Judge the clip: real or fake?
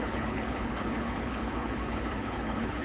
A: fake